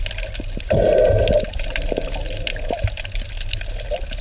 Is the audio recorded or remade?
recorded